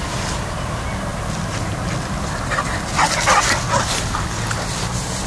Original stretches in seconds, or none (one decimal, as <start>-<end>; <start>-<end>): 0.0-5.3

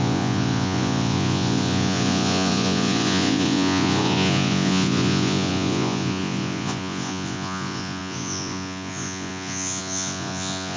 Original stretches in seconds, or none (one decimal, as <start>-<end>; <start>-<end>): none

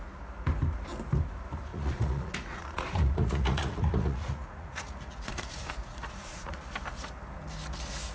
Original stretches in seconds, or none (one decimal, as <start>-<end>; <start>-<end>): 0.0-1.7; 6.6-8.1

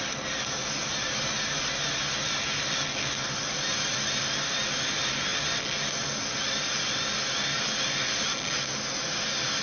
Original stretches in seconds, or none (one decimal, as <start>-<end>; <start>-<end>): 0.0-9.6

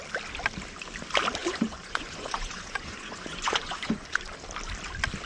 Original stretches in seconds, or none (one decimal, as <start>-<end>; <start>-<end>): 0.0-1.4; 4.2-5.3

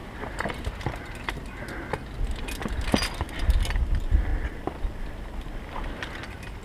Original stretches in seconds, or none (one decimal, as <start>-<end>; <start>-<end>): 0.0-6.6

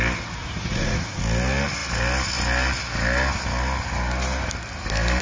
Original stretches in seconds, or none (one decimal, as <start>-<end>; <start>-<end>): 0.0-0.4; 1.2-5.2

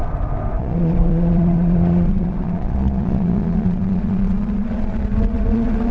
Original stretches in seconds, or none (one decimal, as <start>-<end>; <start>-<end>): 0.0-0.6